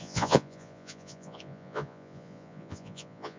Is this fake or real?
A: fake